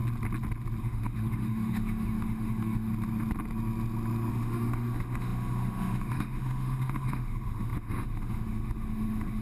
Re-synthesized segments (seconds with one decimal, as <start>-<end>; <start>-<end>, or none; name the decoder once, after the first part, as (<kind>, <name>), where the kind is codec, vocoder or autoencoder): 0.8-2.9 (autoencoder, DAC-VAE); 4.3-9.4